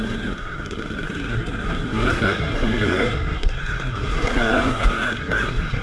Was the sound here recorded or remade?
remade